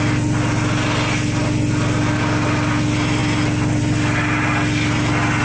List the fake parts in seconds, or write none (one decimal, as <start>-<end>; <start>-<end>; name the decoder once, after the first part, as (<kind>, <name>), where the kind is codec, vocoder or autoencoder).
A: none